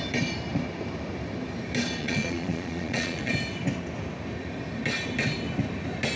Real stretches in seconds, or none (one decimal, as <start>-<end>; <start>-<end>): 0.0-2.0; 3.3-6.2